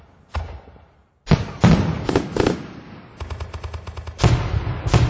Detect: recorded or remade recorded